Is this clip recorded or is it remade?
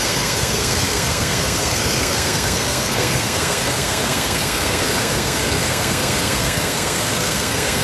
remade